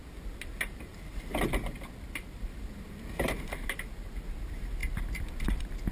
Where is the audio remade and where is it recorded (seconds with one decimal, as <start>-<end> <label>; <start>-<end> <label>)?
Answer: 0.0-5.9 recorded